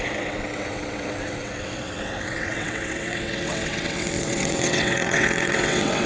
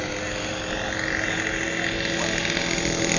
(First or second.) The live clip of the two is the second